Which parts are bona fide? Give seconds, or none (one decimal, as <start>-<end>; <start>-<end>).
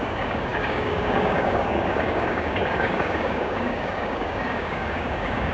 none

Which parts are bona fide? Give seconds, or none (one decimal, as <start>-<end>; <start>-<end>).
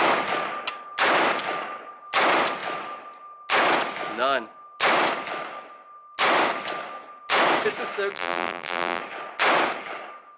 0.0-8.1; 9.0-10.4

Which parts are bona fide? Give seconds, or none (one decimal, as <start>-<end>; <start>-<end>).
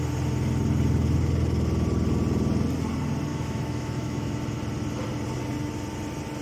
0.0-3.3; 4.3-6.4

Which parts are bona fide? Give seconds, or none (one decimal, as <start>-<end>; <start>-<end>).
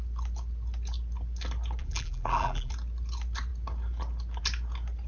0.0-1.8; 2.7-5.1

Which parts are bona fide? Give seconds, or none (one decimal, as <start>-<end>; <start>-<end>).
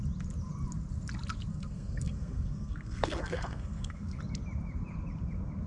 0.0-1.5; 4.2-5.7